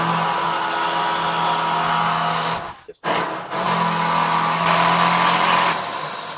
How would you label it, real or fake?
real